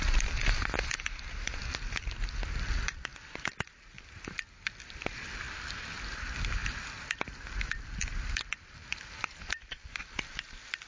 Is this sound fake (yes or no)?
no